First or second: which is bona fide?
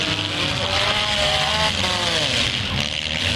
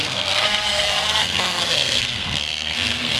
first